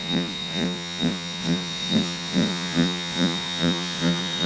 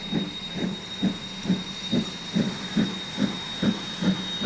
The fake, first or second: first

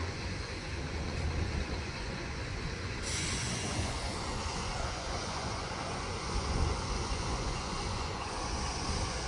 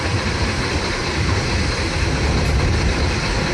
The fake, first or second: first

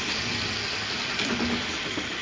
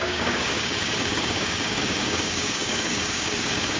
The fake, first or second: second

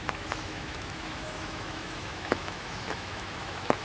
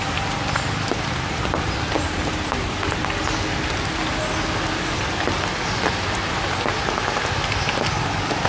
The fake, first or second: first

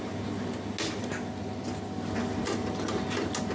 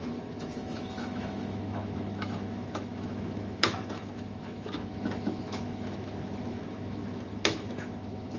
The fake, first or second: second